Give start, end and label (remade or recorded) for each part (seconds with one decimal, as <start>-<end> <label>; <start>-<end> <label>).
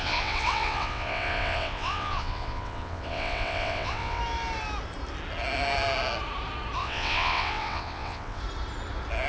0.0-4.2 remade; 4.2-6.8 recorded; 6.8-8.4 remade; 8.4-9.3 recorded